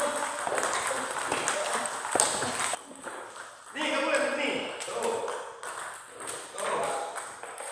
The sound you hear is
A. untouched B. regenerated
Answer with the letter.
A